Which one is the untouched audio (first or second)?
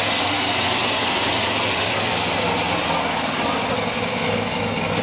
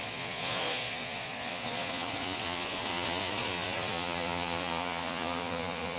first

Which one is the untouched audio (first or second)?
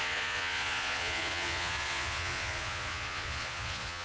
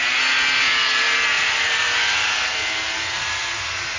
second